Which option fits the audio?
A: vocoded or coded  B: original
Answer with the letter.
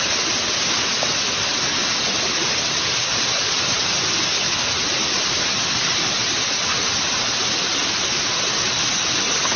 B